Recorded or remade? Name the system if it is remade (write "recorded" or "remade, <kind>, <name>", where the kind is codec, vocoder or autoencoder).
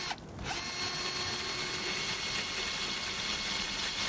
recorded